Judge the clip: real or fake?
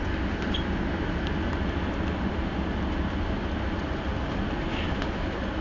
real